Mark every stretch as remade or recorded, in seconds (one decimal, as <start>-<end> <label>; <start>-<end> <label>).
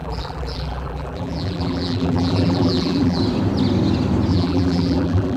0.0-3.2 remade; 3.2-4.3 recorded; 4.3-5.4 remade